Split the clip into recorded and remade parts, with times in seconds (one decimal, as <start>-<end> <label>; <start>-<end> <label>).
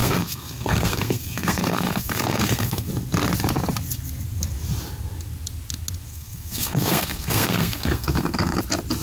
0.0-2.9 remade; 2.9-6.1 recorded; 6.1-8.6 remade; 8.6-9.0 recorded